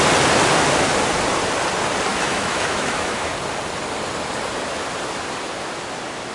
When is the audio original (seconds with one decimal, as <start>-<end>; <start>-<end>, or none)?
0.0-2.1; 3.3-6.3